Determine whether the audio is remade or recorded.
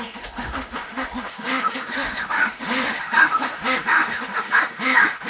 remade